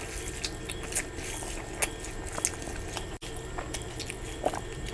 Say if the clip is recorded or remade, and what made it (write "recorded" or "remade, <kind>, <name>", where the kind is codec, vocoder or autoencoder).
recorded